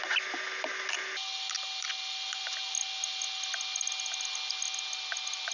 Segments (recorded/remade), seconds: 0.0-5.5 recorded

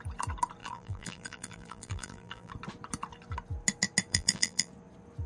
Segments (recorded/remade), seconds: 0.0-0.6 recorded; 0.6-2.5 remade; 2.5-4.1 recorded; 4.1-4.7 remade; 4.7-5.3 recorded

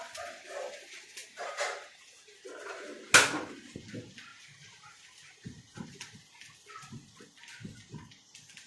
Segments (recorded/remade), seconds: 0.0-1.2 recorded; 1.2-3.1 remade; 3.1-4.3 recorded; 4.3-6.2 remade; 6.2-8.7 recorded

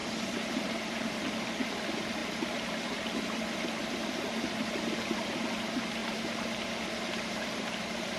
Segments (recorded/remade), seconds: 0.0-1.7 remade; 1.7-2.2 recorded; 2.2-2.8 remade; 2.8-3.8 recorded; 3.8-5.1 remade; 5.1-6.0 recorded; 6.0-8.2 remade

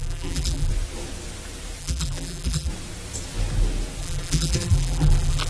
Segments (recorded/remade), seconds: 0.0-0.7 remade; 0.7-1.8 recorded; 1.8-2.7 remade; 2.7-4.0 recorded; 4.0-5.5 remade

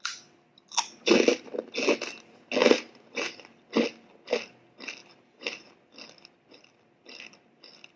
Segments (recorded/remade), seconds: 0.0-2.6 recorded; 2.6-3.4 remade; 3.4-5.0 recorded; 5.0-5.7 remade; 5.7-8.0 recorded